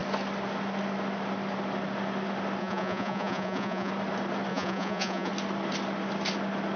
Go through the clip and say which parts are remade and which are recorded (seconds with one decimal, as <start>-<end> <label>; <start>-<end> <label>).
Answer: 0.0-2.6 recorded; 2.6-3.9 remade; 3.9-4.5 recorded; 4.5-5.3 remade; 5.3-6.8 recorded